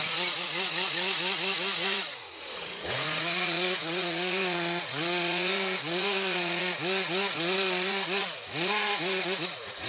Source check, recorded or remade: remade